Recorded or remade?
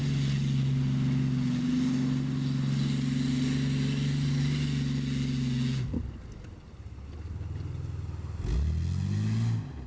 recorded